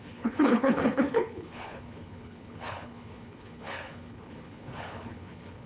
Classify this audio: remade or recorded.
remade